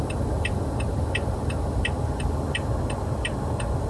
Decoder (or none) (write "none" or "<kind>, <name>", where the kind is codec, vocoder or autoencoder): none